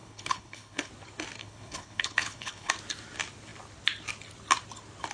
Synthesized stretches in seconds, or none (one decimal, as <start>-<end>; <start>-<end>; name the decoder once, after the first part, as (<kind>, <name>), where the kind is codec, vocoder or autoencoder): 0.0-0.9 (codec, HILCodec); 1.4-2.7